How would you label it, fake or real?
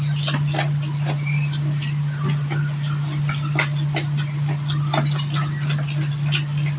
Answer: real